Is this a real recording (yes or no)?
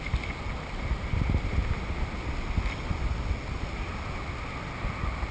yes